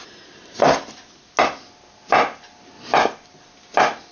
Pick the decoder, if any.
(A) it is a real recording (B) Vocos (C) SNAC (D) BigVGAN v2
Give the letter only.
A